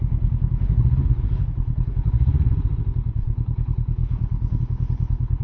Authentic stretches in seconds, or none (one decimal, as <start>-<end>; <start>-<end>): 2.3-3.1